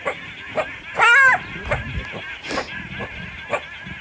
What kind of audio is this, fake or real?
real